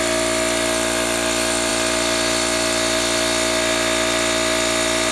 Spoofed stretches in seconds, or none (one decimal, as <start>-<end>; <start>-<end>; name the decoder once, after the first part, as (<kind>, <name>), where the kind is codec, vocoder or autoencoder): none